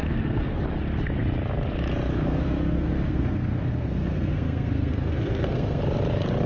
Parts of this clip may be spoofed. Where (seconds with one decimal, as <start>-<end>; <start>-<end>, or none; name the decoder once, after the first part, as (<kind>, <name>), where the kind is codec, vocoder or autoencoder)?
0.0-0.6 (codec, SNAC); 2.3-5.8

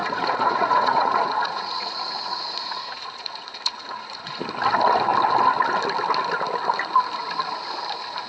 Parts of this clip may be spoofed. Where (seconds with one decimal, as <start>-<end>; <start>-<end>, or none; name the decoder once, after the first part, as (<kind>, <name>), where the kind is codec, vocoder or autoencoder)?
0.0-4.4 (vocoder, Vocos)

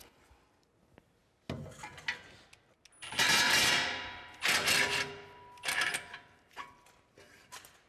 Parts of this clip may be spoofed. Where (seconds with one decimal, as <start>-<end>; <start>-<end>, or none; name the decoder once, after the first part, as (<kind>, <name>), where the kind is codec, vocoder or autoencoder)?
none

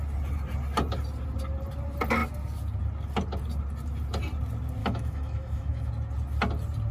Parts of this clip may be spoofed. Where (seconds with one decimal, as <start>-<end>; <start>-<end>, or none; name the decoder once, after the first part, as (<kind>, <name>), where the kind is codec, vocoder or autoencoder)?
4.8-5.9 (autoencoder, DAC-VAE)

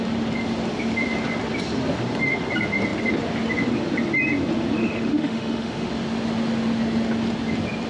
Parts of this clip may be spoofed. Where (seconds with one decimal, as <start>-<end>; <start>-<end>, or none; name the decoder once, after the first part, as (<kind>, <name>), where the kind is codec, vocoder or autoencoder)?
4.8-5.9 (autoencoder, DAC-VAE)

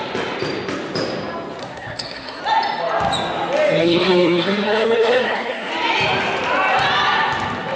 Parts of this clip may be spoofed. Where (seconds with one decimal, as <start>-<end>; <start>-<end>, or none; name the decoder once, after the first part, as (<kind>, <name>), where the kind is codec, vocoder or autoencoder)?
1.6-2.4 (codec, SNAC); 3.8-5.7

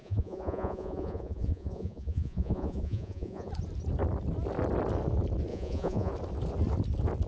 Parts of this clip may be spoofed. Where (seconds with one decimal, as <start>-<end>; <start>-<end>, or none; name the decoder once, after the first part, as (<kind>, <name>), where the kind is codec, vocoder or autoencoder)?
0.0-3.5 (vocoder, Vocos); 5.5-6.1

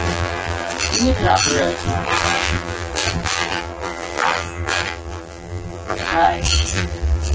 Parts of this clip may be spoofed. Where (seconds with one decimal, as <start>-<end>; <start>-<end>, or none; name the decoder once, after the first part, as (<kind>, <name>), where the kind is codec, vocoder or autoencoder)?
0.0-7.3 (vocoder, BigVGAN v2)